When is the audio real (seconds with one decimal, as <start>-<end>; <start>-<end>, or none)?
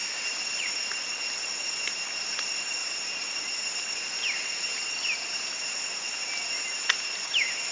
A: 0.7-7.7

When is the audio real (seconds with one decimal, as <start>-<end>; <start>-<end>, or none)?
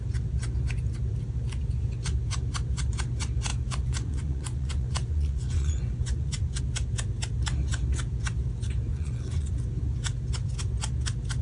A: 0.0-3.5; 6.6-8.9; 9.5-11.4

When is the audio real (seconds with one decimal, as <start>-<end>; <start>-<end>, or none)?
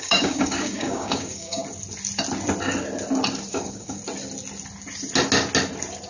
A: 1.6-3.5; 4.0-6.1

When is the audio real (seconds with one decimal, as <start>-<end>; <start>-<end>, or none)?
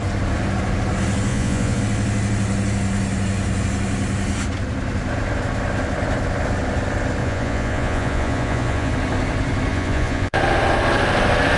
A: 0.0-1.3; 1.8-7.2; 8.9-9.7; 10.4-11.6